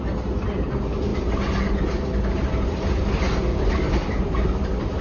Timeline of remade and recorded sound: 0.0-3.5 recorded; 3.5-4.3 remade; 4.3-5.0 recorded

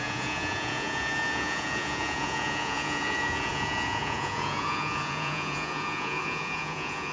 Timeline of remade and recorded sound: 0.0-7.1 remade

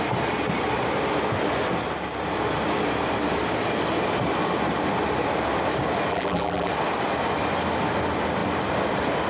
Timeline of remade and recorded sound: 0.0-6.1 recorded; 6.1-6.7 remade; 6.7-9.3 recorded

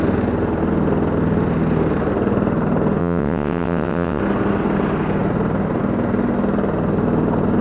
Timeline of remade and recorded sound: 0.0-3.0 recorded; 3.0-4.2 remade; 4.2-7.6 recorded

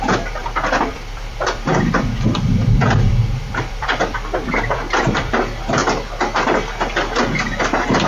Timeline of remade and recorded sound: 0.0-5.8 remade; 5.8-8.1 recorded

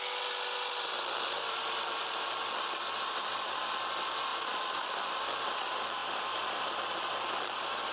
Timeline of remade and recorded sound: 0.0-7.9 recorded